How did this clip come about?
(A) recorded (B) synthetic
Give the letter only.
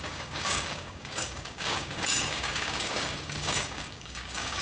B